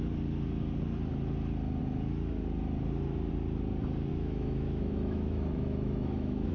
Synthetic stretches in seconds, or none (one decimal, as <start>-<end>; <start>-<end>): 4.1-6.5